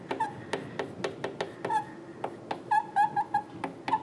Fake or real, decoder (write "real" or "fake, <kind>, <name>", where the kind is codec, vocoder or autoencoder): real